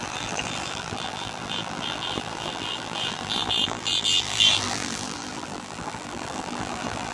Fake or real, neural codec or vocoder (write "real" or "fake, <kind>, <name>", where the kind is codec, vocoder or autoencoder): fake, vocoder, BigVGAN v2